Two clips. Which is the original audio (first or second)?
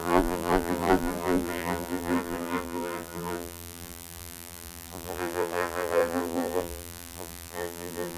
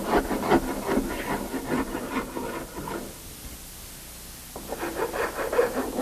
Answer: second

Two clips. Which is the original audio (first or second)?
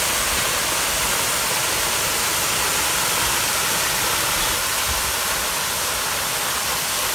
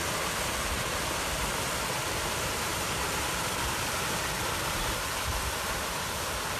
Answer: first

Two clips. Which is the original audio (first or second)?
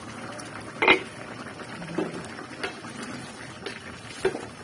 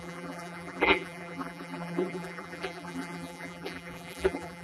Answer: first